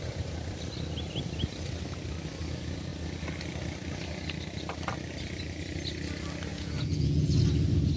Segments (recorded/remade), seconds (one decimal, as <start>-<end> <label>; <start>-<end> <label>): 0.0-6.5 recorded; 6.5-7.3 remade; 7.3-8.0 recorded

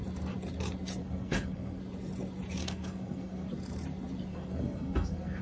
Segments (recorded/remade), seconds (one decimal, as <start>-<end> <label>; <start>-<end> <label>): 0.0-1.0 recorded; 1.0-1.8 remade; 1.8-2.6 recorded; 2.6-3.5 remade; 3.5-4.3 recorded; 4.3-5.4 remade

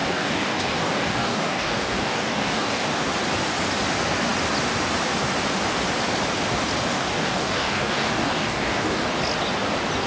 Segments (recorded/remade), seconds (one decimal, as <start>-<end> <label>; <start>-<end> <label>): 0.0-2.9 remade; 2.9-6.9 recorded; 6.9-9.1 remade; 9.1-10.1 recorded

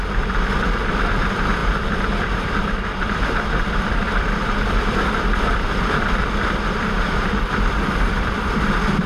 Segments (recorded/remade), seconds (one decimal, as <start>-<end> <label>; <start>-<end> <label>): 0.0-9.1 remade

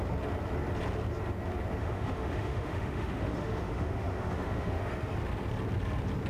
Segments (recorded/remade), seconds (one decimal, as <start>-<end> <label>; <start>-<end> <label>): 0.0-1.8 recorded; 1.8-4.9 remade; 4.9-6.3 recorded